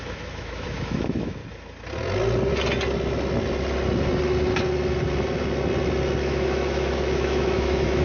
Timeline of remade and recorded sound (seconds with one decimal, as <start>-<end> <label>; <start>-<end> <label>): 0.0-1.4 remade; 1.4-6.2 recorded; 6.2-8.0 remade